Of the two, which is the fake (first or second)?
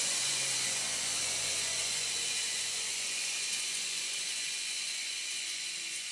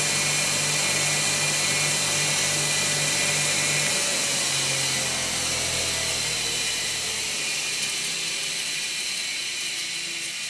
first